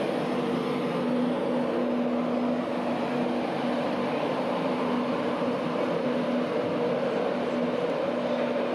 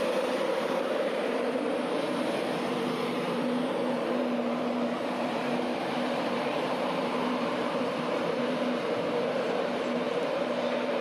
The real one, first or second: first